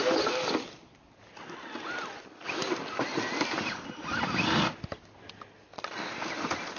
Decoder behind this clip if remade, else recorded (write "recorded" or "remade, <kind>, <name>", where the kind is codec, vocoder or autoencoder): remade, vocoder, BigVGAN v2